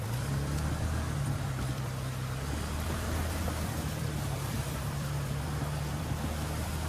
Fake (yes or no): yes